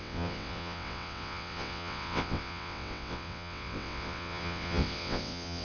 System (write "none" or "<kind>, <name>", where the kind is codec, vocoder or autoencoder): vocoder, WaveNeXt